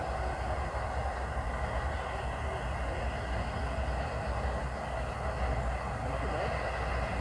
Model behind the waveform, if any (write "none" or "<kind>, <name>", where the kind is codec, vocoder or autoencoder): none